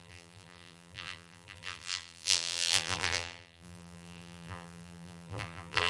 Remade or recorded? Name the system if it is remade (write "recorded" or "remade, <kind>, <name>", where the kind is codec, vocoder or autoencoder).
remade, vocoder, BigVGAN v2